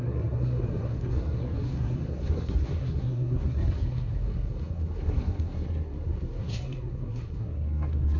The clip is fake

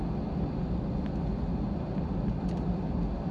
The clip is real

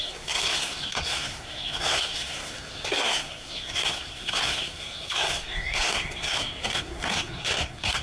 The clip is fake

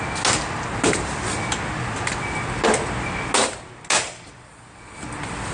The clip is real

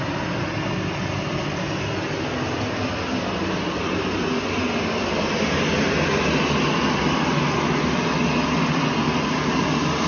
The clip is real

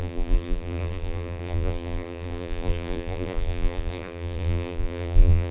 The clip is fake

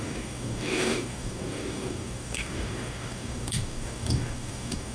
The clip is fake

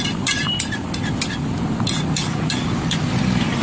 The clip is real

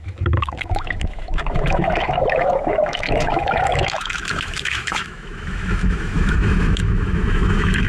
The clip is fake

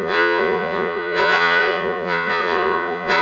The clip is fake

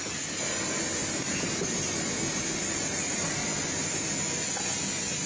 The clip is real